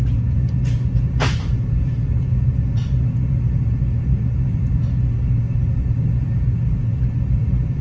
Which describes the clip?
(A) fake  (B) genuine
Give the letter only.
A